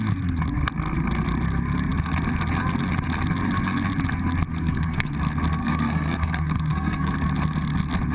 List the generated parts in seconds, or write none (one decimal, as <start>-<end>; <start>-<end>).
4.6-5.1; 5.6-7.1

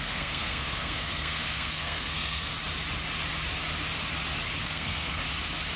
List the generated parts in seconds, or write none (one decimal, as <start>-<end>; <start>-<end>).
0.0-2.5; 4.6-5.2

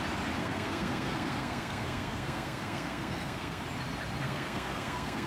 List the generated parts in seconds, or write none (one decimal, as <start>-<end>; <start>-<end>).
0.4-3.6; 4.2-5.3

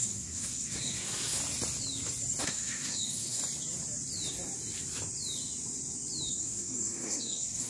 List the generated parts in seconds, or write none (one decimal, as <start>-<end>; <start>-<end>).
0.0-1.4; 2.4-3.4; 6.3-7.7

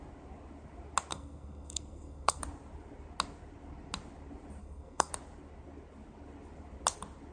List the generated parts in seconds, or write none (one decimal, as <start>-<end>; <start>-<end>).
1.1-2.4; 4.6-5.1

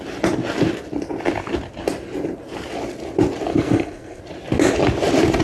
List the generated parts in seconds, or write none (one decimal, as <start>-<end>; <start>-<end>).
3.5-4.2